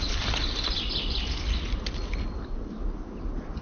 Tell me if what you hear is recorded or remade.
recorded